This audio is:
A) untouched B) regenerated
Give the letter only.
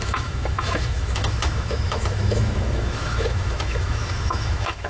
B